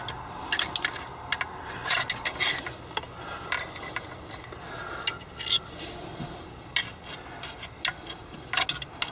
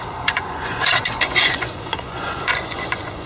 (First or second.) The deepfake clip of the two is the second